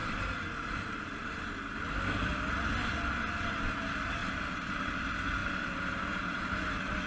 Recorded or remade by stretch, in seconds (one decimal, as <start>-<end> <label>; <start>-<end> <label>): 0.0-1.4 remade; 1.4-4.2 recorded; 4.2-4.9 remade; 4.9-5.4 recorded; 5.4-6.5 remade; 6.5-7.1 recorded